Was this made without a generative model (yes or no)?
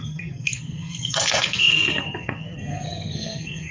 no